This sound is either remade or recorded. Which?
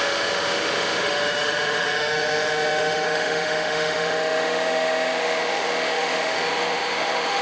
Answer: remade